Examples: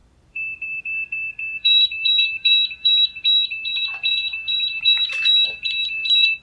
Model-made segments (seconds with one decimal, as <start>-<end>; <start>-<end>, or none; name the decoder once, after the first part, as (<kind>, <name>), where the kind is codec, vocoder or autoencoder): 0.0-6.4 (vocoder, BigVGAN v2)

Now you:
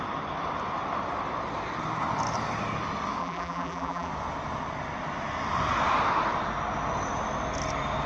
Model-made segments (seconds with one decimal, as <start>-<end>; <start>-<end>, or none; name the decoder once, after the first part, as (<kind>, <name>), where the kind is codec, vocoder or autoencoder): 3.2-4.1 (vocoder, BigVGAN v2)

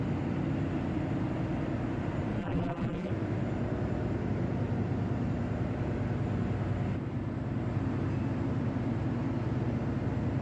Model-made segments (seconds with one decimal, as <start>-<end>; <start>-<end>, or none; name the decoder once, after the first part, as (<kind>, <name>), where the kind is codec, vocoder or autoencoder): 2.4-3.1 (vocoder, BigVGAN v2)

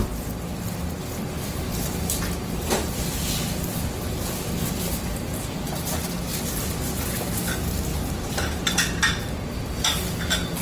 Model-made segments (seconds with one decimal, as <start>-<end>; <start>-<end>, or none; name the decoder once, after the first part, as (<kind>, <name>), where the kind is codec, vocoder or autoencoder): 7.9-9.0 (vocoder, BigVGAN v2)